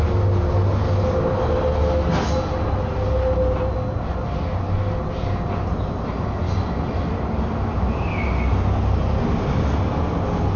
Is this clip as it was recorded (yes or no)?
yes